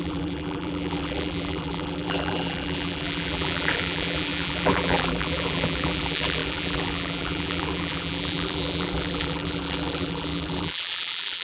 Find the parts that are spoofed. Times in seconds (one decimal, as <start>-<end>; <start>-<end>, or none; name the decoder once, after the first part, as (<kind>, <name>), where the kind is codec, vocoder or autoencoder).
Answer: 0.0-11.4 (vocoder, BigVGAN v2)

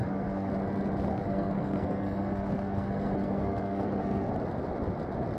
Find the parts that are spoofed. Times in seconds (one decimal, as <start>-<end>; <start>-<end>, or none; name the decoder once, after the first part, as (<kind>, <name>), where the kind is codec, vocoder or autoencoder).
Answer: 0.0-0.5 (codec, SNAC); 1.1-4.3

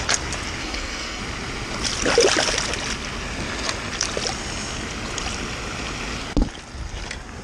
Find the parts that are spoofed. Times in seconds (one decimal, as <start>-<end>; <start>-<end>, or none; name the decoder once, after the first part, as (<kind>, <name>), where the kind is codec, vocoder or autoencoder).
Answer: 0.6-1.2 (codec, SNAC)

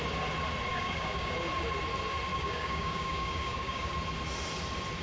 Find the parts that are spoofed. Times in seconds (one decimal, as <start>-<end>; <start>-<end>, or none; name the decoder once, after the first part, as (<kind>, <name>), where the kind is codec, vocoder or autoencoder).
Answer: 0.7-1.3 (codec, DAC); 2.3-3.9